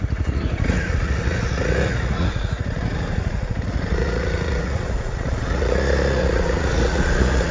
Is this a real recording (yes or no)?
no